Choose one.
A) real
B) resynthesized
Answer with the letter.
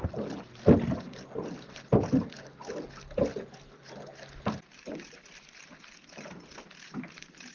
A